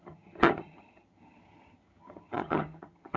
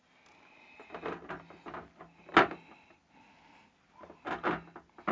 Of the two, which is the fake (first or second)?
first